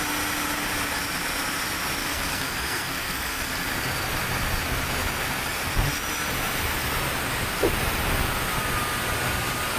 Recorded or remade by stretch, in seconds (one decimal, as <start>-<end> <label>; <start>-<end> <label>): 0.0-2.0 recorded; 2.0-3.5 remade; 3.5-9.8 recorded